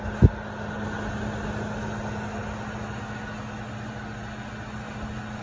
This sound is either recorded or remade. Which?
recorded